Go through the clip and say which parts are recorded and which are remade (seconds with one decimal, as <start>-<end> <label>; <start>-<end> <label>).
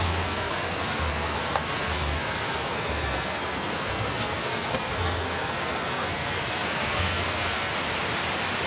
0.0-7.7 remade; 7.7-8.7 recorded